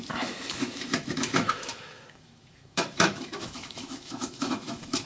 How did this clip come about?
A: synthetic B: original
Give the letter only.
A